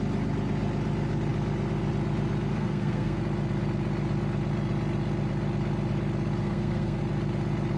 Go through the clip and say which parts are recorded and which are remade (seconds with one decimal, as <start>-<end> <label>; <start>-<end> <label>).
0.0-2.5 recorded; 2.5-3.2 remade; 3.2-6.4 recorded; 6.4-7.0 remade; 7.0-7.8 recorded